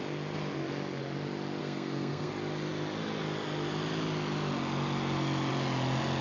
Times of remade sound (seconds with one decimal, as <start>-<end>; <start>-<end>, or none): 1.6-2.3